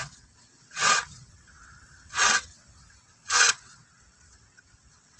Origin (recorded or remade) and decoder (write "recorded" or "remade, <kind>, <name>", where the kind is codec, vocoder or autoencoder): remade, vocoder, WaveNeXt